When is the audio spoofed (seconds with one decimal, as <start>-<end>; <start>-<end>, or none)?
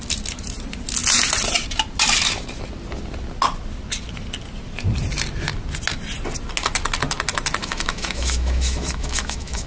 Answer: 7.6-9.7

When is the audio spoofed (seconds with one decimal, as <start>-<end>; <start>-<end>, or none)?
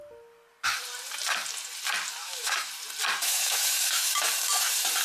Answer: 2.2-2.7; 3.2-4.2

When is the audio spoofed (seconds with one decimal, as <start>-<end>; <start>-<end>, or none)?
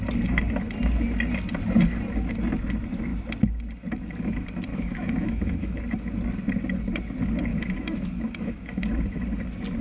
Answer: 4.7-5.8; 7.5-8.9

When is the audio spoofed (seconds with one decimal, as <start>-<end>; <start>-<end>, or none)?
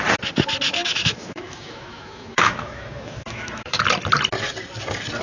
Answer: 0.7-3.8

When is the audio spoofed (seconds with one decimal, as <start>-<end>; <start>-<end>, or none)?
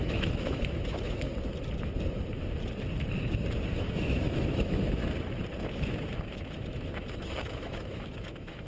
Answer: 0.0-1.3; 3.7-5.0; 5.6-8.7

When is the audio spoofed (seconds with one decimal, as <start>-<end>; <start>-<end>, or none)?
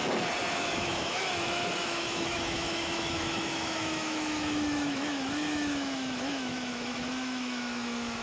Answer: 0.5-8.2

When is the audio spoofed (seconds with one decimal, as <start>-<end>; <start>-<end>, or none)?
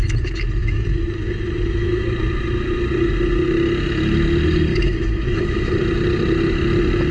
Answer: 0.6-2.0; 4.7-5.7